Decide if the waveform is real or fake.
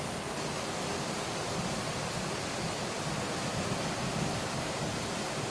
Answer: real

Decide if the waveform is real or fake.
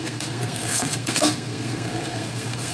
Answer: fake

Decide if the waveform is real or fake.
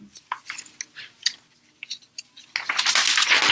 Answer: real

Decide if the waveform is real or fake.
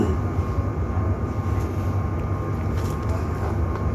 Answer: real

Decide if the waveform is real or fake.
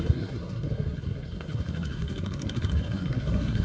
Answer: fake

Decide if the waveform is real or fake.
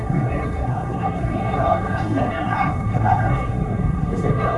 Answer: fake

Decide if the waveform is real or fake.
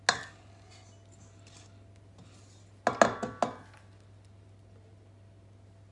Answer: real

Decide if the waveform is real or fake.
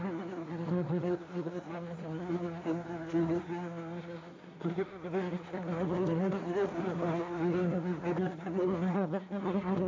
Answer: fake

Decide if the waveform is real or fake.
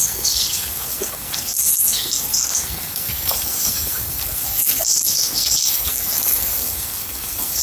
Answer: fake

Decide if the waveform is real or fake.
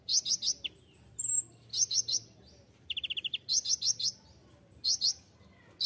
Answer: real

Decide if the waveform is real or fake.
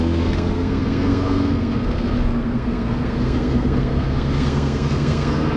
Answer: fake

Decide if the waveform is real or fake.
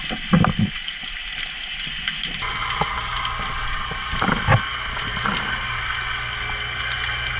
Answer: real